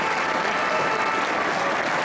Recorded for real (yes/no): yes